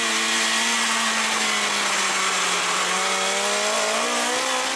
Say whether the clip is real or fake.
real